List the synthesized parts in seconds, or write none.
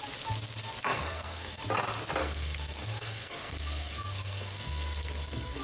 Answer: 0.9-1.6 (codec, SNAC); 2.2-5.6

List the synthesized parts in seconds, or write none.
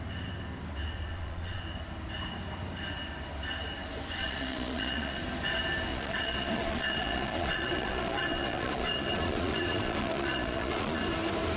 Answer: 1.1-1.6 (vocoder, Vocos); 4.2-5.2; 5.9-11.0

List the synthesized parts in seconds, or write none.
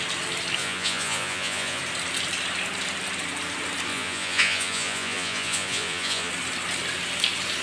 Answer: 0.6-1.8 (vocoder, Vocos); 3.9-6.3